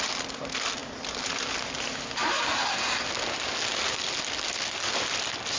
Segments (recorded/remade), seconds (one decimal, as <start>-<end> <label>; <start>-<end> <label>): 0.0-5.6 recorded